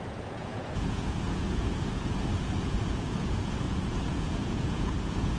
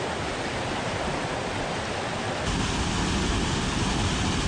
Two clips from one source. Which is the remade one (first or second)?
first